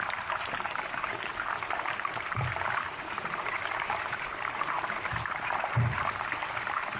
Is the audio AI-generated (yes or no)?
yes